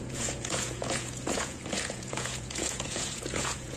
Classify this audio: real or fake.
fake